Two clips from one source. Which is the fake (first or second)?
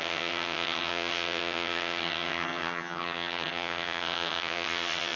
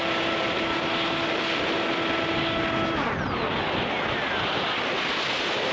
first